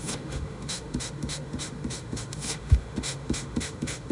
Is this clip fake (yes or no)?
yes